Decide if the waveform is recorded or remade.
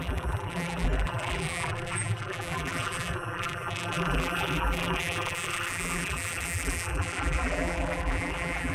remade